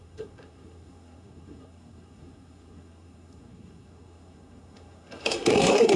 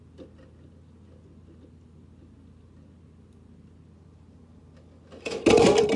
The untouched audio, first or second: second